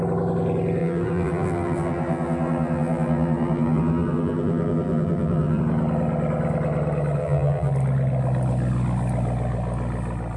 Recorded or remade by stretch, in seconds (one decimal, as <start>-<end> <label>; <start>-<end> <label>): 0.0-0.8 recorded; 0.8-5.6 remade; 5.6-7.2 recorded; 7.2-7.7 remade; 7.7-10.4 recorded